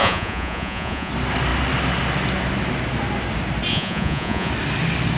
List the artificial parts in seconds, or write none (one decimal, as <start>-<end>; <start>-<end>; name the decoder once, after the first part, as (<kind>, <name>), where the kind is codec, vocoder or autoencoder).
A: 0.0-1.1 (vocoder, Vocos); 3.7-4.5